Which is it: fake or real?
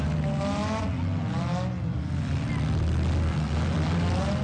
real